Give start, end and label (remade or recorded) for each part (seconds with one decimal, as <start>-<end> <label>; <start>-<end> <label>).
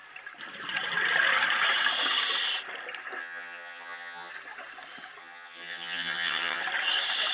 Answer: 0.0-3.2 recorded; 3.2-4.3 remade; 4.3-5.2 recorded; 5.2-6.6 remade; 6.6-7.3 recorded